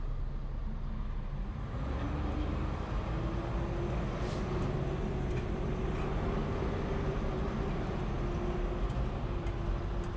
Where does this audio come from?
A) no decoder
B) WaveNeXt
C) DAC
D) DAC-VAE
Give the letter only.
A